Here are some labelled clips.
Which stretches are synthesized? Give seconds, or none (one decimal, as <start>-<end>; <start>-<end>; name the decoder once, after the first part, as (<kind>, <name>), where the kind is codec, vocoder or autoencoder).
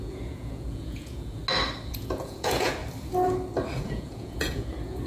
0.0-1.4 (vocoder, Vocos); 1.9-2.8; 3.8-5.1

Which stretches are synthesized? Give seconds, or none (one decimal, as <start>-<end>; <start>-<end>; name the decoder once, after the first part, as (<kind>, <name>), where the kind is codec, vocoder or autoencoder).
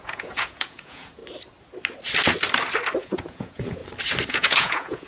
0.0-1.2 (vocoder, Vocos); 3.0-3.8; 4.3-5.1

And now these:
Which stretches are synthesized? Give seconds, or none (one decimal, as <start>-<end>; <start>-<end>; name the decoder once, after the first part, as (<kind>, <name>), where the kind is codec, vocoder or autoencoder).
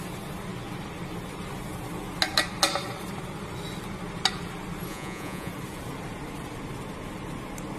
4.9-5.5 (vocoder, Vocos)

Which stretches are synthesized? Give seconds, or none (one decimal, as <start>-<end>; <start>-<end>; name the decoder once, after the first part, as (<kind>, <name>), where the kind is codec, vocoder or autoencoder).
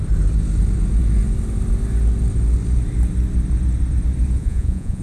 4.4-5.0 (vocoder, Vocos)